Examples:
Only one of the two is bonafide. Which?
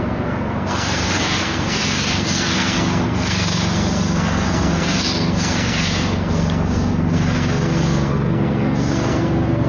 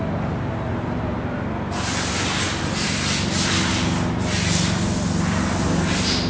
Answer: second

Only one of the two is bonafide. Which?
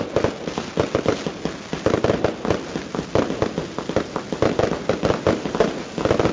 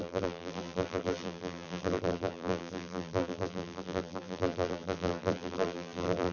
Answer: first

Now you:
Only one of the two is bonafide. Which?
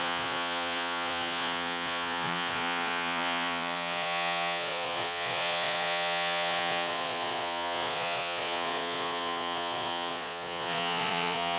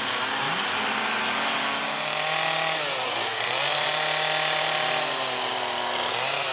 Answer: second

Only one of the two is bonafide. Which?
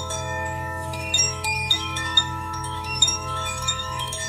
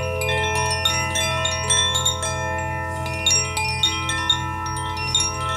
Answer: second